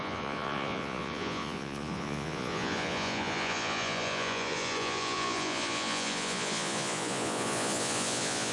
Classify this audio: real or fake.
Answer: fake